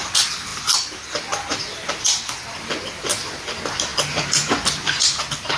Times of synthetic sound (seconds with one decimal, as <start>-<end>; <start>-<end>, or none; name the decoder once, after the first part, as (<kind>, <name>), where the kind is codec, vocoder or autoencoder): none